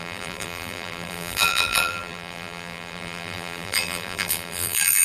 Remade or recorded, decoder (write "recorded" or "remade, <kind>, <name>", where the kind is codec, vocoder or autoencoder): remade, vocoder, BigVGAN v2